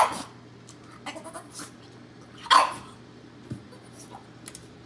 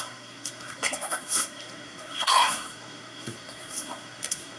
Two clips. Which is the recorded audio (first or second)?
first